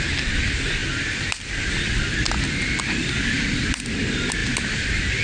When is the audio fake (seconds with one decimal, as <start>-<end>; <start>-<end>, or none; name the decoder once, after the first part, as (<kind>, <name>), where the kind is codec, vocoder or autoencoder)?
0.8-3.9 (vocoder, BigVGAN v2); 4.4-5.2